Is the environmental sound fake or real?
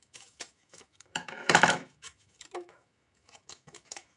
fake